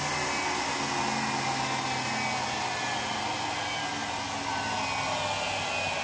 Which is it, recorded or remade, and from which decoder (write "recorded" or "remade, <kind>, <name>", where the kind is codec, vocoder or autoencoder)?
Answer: recorded